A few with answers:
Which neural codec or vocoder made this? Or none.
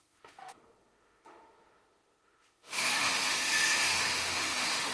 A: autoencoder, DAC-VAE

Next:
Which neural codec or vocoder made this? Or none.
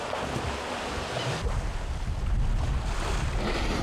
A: none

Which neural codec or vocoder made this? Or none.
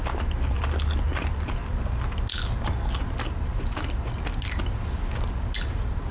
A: none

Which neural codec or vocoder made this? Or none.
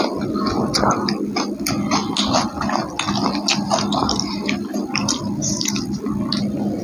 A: none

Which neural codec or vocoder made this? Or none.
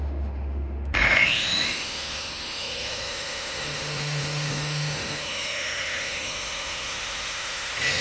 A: autoencoder, DAC-VAE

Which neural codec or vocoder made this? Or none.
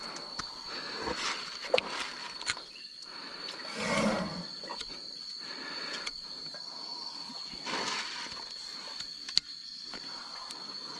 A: none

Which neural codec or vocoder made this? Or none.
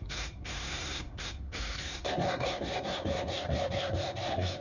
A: codec, SNAC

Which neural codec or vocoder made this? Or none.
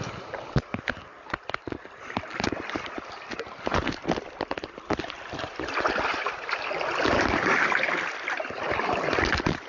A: none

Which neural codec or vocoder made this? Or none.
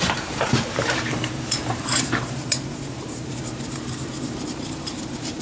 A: vocoder, BigVGAN v2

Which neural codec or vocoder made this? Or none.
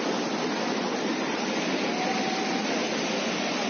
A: none